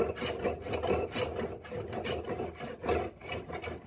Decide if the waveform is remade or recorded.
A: recorded